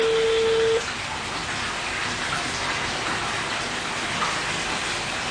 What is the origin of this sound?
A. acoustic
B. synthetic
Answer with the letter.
A